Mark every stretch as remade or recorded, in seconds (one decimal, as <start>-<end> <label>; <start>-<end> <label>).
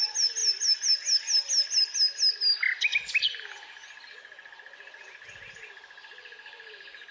0.0-7.1 recorded